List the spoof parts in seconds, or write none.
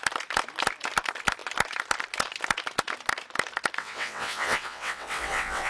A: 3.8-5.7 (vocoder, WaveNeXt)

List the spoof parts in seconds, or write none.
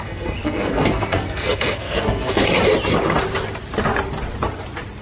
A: 0.0-2.4 (codec, SNAC)